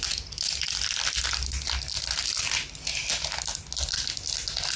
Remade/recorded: recorded